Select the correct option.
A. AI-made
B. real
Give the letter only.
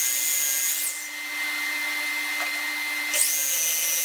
B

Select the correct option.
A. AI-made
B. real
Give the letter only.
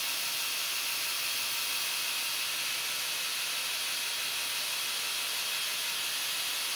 B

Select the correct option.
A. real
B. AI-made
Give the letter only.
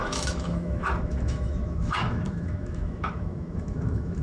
B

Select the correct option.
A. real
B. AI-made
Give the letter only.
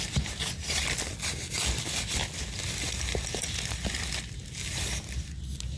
A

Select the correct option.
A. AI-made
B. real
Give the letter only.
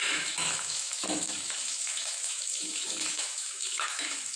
A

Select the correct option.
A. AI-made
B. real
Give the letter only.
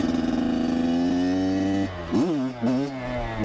B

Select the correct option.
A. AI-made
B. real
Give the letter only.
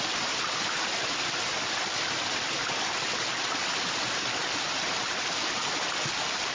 B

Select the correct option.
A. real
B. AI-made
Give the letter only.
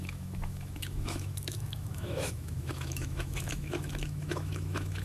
B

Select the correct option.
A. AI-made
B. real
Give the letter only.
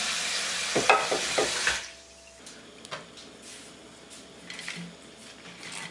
B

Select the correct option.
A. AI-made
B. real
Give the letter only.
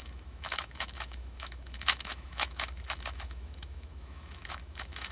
A